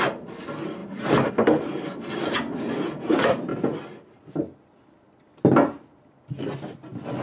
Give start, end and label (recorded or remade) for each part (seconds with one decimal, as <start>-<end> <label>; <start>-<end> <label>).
0.0-7.2 recorded